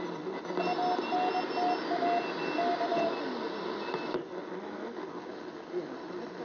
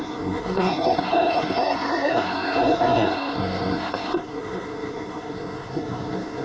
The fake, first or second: second